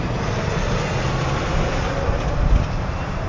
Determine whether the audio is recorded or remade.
recorded